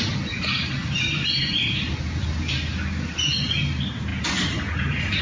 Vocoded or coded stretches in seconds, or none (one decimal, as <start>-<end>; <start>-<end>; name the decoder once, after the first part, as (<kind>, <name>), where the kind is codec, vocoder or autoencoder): none